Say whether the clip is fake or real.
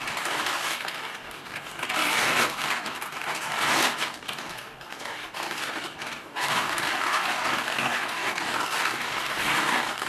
fake